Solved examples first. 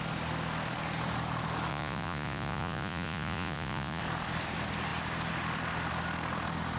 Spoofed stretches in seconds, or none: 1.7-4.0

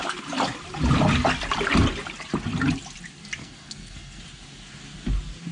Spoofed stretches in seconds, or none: 3.4-4.2

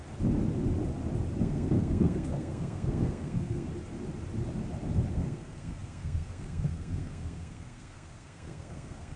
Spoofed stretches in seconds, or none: 1.4-3.7; 5.1-9.2